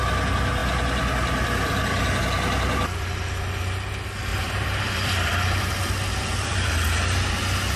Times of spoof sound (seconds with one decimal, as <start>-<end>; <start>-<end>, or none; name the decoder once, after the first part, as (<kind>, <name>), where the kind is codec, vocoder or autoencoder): 4.3-7.3 (vocoder, BigVGAN v2)